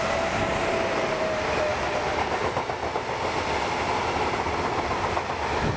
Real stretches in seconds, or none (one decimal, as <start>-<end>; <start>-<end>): 0.0-5.8